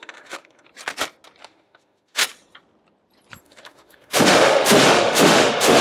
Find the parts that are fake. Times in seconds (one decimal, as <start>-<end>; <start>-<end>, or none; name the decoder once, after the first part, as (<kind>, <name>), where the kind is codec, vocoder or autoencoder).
0.0-0.7 (autoencoder, DAC-VAE); 1.4-2.2; 3.4-5.8